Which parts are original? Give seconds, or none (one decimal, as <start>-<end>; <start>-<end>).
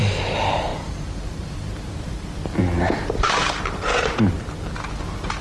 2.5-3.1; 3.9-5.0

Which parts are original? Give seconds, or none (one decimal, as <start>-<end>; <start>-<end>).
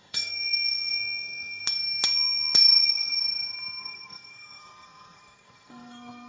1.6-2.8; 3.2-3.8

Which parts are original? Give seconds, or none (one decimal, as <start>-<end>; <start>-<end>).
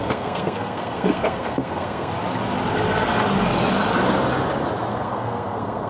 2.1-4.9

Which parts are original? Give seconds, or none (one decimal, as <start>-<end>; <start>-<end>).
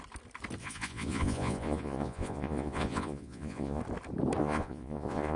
0.0-0.6; 3.8-4.4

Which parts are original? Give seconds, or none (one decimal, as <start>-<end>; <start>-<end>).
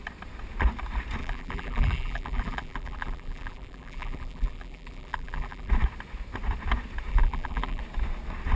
0.0-1.2; 5.7-7.1; 7.8-8.6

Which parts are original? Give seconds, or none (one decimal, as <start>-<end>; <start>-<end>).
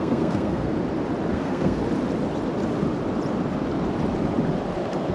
0.7-1.3; 1.8-5.1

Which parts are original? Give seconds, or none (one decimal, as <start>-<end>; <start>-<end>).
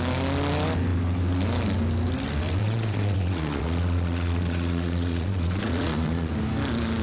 0.0-2.6; 6.3-7.0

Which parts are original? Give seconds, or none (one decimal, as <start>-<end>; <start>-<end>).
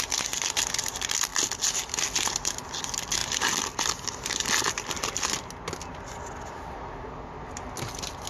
0.0-3.2; 5.2-8.3